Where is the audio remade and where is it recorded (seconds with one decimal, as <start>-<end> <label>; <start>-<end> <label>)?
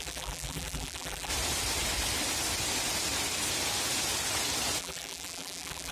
0.0-1.3 remade; 1.3-4.8 recorded; 4.8-5.9 remade